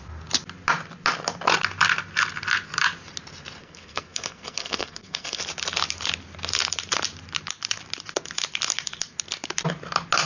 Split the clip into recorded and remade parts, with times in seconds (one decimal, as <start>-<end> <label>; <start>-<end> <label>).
0.0-3.6 recorded; 3.6-5.4 remade; 5.4-10.3 recorded